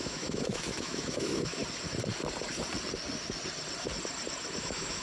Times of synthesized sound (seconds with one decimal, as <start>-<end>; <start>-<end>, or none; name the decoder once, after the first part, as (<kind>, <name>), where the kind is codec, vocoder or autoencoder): 0.0-1.6 (autoencoder, DAC-VAE); 4.6-5.0